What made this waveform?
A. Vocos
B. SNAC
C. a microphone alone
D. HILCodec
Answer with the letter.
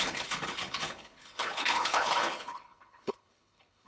D